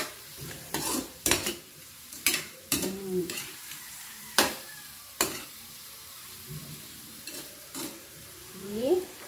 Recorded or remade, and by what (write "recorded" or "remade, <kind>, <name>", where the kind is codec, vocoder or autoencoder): remade, vocoder, BigVGAN v2